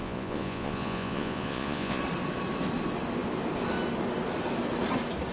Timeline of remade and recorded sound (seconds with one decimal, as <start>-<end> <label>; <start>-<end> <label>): 0.0-2.0 remade; 2.0-5.3 recorded